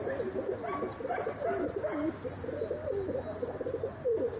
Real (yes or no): yes